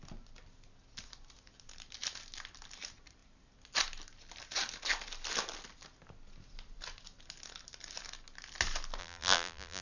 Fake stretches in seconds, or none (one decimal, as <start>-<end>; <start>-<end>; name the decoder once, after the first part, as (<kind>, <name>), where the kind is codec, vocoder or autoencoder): 9.0-9.8 (vocoder, BigVGAN v2)